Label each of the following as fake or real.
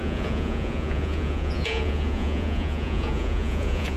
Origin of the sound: fake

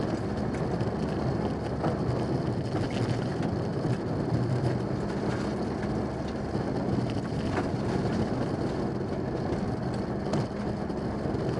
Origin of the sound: real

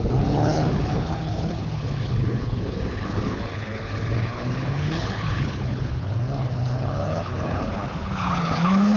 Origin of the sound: fake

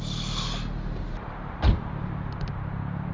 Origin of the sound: real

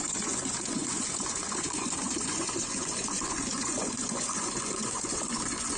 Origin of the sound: fake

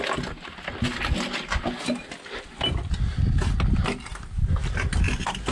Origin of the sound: real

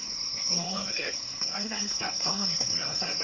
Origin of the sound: fake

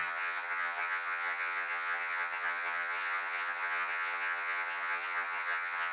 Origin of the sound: fake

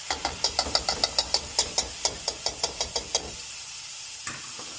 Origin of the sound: real